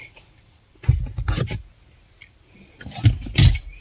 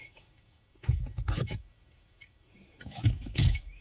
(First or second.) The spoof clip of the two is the second